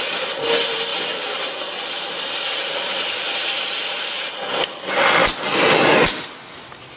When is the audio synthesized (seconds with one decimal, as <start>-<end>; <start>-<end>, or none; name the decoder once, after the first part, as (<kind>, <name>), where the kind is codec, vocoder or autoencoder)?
none